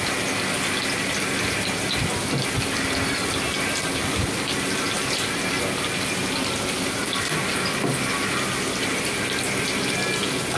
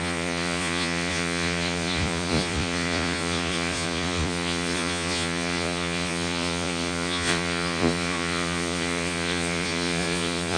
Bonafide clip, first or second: first